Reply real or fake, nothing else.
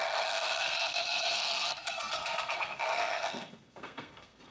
fake